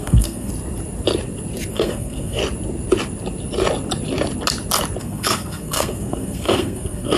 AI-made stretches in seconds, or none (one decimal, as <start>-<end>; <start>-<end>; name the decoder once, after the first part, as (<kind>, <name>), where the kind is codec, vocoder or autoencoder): 0.0-0.5 (codec, SNAC); 1.7-2.4; 5.0-7.2